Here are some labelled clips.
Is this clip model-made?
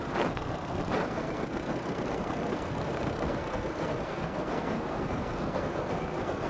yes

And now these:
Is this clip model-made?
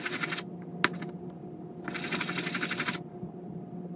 no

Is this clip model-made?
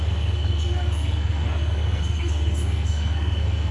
yes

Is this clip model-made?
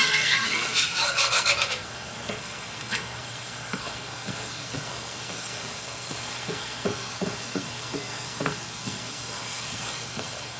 yes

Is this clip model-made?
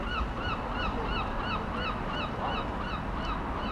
no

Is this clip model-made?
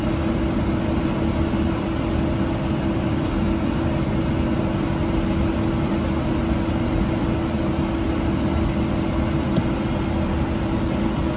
no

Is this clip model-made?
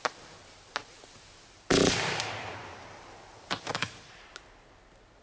no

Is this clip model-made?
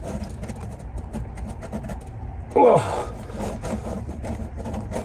no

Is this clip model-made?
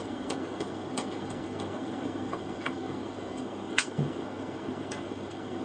yes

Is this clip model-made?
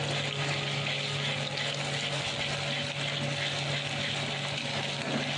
no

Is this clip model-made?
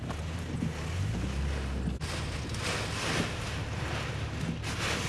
no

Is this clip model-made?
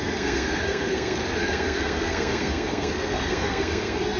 yes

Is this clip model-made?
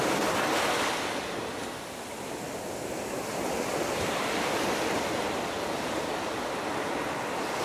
no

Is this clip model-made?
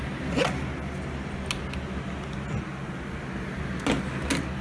no